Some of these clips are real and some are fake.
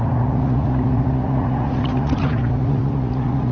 fake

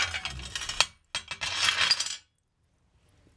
real